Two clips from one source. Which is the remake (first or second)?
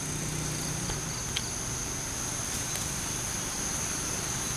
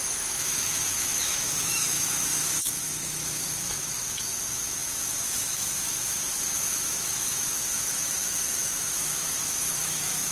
second